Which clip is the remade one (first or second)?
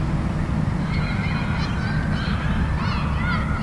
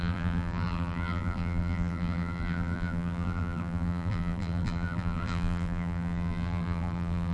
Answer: second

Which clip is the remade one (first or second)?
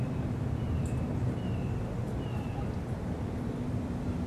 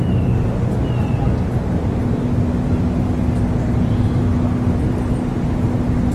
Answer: first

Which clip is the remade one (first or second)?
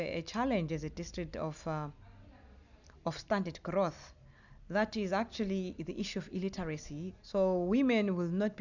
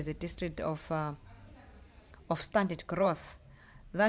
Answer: second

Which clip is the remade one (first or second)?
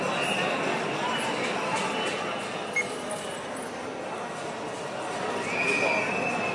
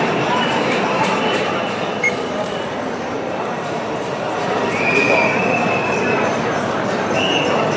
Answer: second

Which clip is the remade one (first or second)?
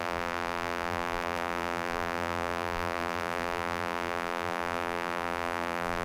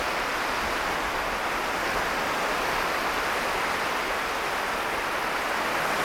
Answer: first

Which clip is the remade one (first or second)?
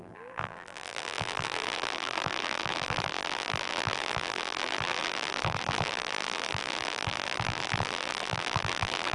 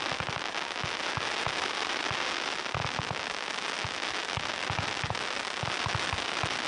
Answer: first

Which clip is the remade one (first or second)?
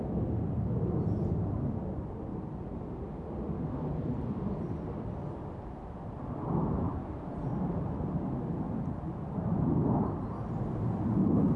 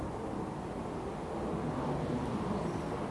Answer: first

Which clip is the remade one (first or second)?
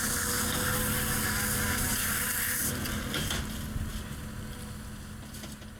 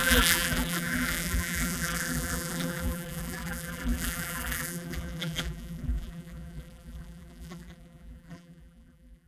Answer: second